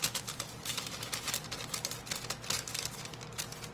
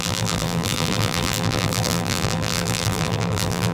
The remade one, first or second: second